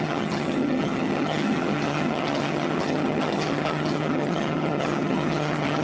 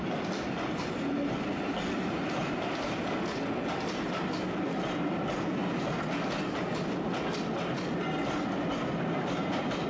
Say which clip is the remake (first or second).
first